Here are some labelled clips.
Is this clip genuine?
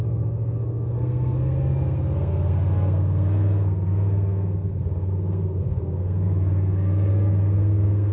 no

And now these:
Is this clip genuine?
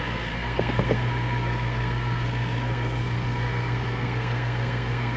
no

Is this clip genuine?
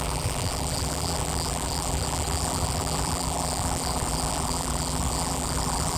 no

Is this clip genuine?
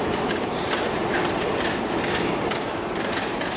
yes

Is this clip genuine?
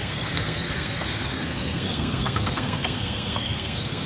no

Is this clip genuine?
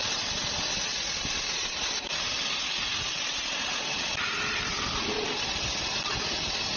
yes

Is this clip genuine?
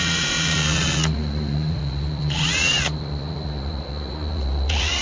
no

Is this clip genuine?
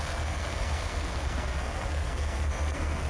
no